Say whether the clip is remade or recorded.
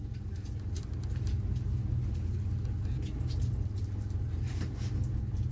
recorded